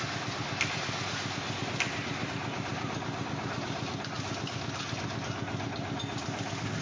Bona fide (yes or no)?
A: yes